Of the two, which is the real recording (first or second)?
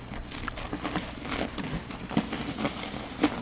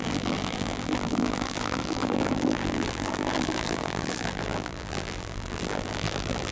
first